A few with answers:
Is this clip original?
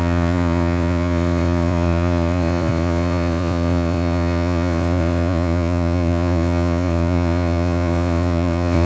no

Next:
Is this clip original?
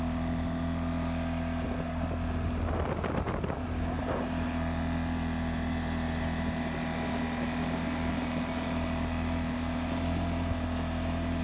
yes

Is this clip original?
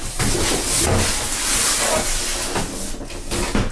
yes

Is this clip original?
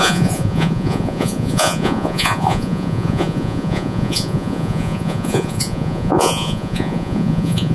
no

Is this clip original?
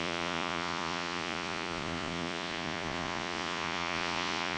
no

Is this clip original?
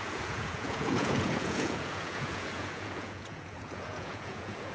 no